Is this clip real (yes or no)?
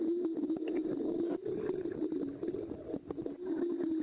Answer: yes